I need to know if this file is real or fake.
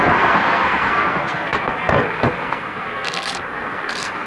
fake